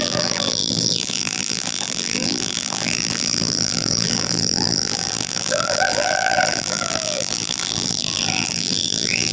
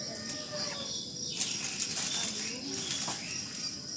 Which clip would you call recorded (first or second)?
second